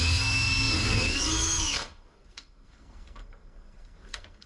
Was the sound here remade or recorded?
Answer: remade